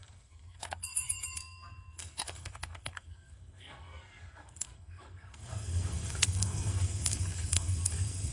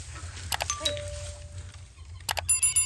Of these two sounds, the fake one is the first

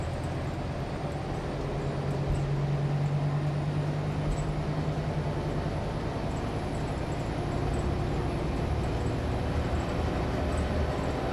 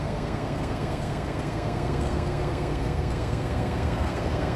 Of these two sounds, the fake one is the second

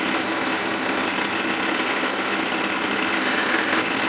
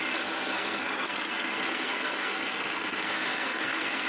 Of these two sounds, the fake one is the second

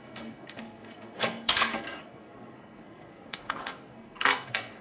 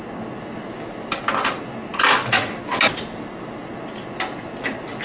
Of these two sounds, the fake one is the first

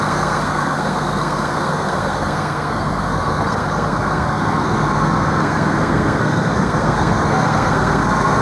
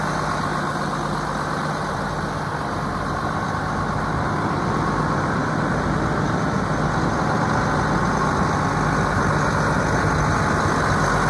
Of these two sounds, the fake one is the first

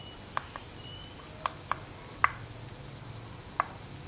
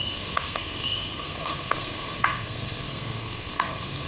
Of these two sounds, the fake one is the second